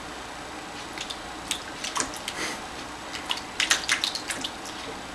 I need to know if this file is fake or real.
real